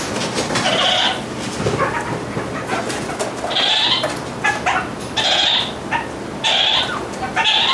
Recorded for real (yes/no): yes